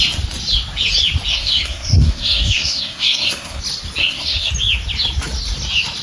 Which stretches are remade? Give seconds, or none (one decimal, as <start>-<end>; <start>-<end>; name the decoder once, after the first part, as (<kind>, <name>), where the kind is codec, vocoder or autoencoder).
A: 1.3-3.6 (codec, SNAC); 4.0-4.5